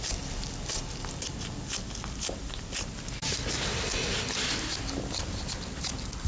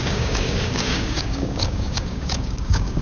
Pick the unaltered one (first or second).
first